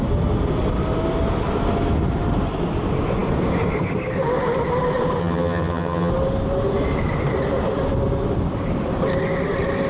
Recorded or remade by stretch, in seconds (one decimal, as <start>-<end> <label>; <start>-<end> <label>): 0.0-5.2 recorded; 5.2-6.1 remade; 6.1-9.9 recorded